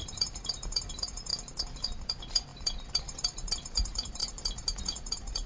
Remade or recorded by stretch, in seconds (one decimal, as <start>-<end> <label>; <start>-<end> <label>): 0.0-1.3 remade; 1.3-1.8 recorded; 1.8-4.2 remade; 4.2-4.8 recorded; 4.8-5.5 remade